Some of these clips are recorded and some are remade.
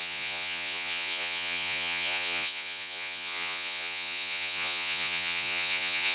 remade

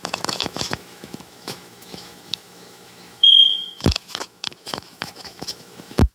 remade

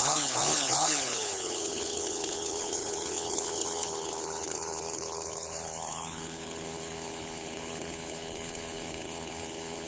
remade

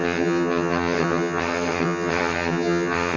remade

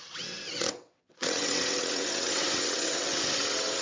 remade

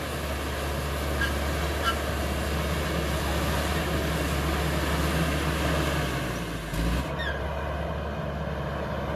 recorded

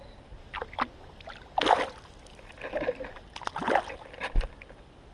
recorded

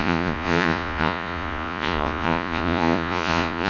remade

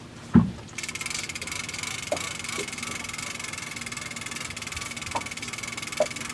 recorded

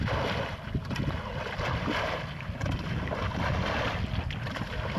recorded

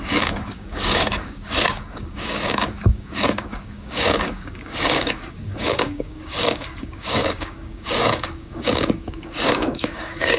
remade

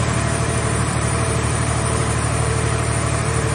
remade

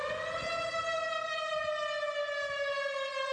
recorded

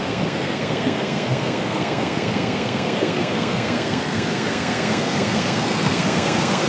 remade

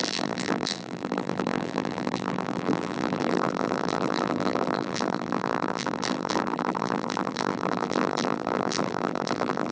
remade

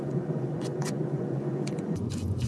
remade